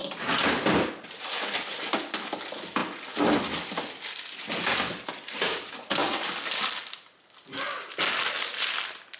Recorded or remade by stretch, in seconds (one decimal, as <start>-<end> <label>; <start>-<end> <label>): 0.0-9.2 recorded